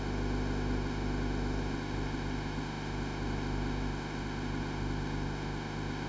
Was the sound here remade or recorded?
remade